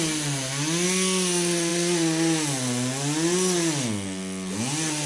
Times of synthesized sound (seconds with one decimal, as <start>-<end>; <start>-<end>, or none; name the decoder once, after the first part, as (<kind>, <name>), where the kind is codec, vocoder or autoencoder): none